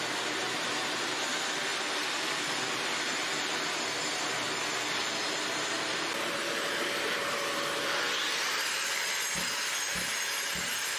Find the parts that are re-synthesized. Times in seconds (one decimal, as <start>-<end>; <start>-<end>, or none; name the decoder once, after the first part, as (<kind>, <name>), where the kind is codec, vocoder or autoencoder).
1.7-2.5 (vocoder, BigVGAN v2); 6.4-8.9